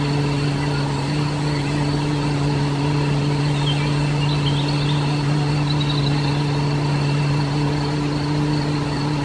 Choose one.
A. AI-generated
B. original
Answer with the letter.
B